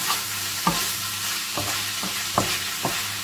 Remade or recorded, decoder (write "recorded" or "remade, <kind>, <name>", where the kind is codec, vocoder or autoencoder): remade, vocoder, BigVGAN v2